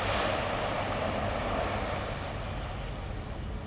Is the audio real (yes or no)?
yes